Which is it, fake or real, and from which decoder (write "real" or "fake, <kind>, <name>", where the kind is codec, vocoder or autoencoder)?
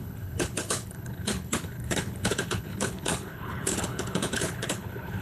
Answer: fake, codec, HILCodec